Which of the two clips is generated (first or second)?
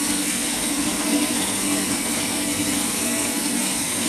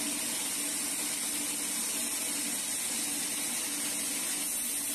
first